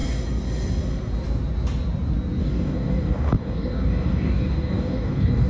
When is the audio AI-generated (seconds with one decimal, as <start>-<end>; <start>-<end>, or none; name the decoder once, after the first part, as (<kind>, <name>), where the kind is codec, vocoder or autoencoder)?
2.4-5.5 (codec, DAC)